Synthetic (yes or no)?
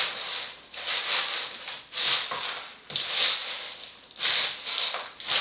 no